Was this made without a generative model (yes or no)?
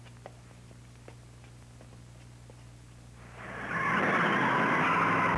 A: yes